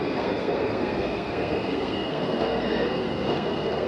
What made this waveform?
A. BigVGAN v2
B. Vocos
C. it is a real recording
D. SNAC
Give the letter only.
D